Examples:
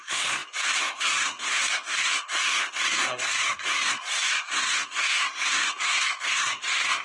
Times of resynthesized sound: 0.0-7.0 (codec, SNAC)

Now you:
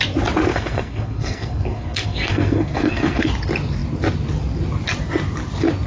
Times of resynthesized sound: 0.5-3.3 (codec, SNAC)

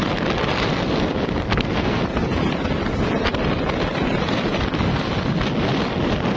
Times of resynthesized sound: 1.5-2.0 (codec, SNAC)

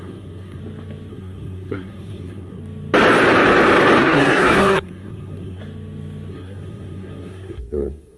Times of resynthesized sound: 0.0-0.6 (codec, SNAC); 1.1-2.6; 4.0-5.6; 6.3-8.2

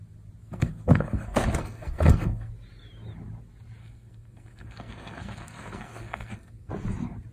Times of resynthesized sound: 0.4-2.5 (codec, SNAC); 3.8-6.7

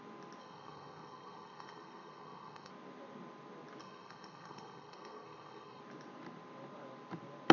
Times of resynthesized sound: 0.4-2.7 (codec, SNAC); 3.8-5.8

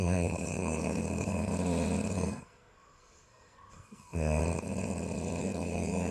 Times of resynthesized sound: 0.0-1.5 (codec, SNAC); 2.1-4.4; 5.4-6.1